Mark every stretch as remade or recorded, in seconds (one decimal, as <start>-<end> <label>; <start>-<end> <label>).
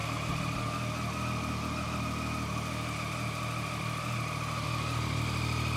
0.0-5.8 recorded